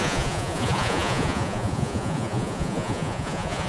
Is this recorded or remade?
remade